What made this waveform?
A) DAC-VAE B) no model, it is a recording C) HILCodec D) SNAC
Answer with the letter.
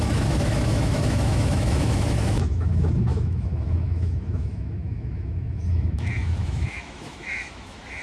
A